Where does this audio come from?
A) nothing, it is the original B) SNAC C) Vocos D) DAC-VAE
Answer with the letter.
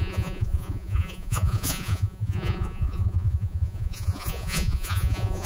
C